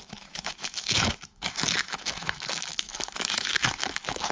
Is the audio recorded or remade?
remade